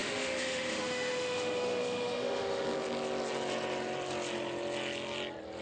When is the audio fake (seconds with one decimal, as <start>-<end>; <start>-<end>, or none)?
0.0-2.6